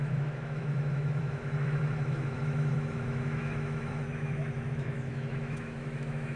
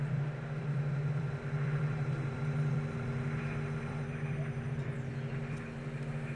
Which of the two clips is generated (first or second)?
first